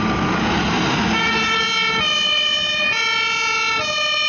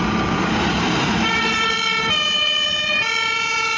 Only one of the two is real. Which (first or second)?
first